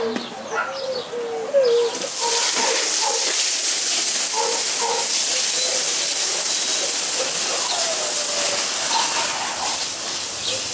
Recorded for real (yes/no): yes